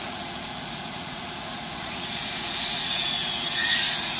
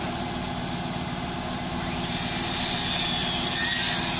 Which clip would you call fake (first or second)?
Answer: first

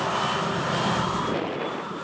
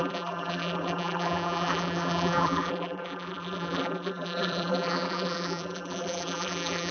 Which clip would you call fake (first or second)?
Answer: second